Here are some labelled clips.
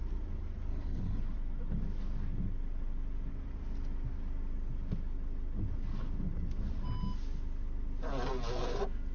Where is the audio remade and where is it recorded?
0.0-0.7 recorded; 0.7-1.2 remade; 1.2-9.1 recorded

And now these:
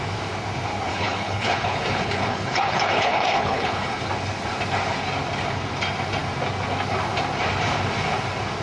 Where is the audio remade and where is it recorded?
0.0-0.9 recorded; 0.9-4.0 remade; 4.0-8.6 recorded